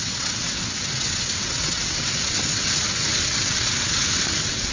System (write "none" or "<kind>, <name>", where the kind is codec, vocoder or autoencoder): vocoder, WaveNeXt